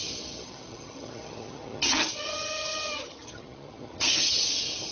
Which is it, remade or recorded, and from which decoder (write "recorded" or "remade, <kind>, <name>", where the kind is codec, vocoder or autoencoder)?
remade, vocoder, HiFi-GAN